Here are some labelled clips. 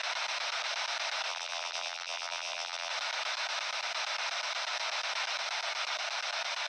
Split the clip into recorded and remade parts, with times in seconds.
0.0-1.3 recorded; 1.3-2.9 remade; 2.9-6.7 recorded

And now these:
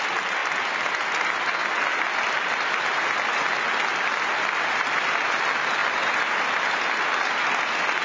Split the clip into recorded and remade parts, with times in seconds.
0.0-0.4 remade; 0.4-4.5 recorded; 4.5-5.8 remade; 5.8-6.9 recorded; 6.9-8.0 remade